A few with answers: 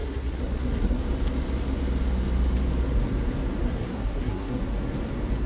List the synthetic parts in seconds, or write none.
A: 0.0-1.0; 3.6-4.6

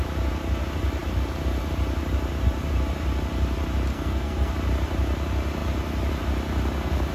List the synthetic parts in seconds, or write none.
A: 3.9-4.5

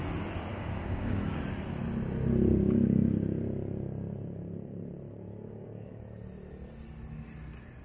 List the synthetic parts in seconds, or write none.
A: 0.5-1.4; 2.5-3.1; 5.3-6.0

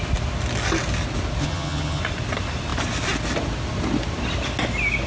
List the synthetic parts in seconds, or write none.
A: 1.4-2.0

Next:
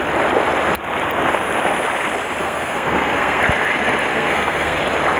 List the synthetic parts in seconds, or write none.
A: 2.4-3.4; 4.1-4.8

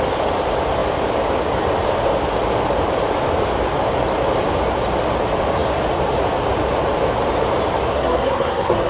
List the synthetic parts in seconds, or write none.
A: 7.9-8.9

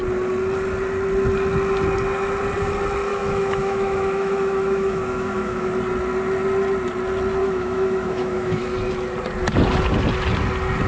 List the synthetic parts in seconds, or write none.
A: 3.1-5.7; 7.4-8.6